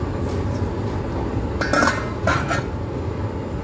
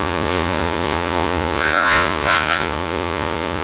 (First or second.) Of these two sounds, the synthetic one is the second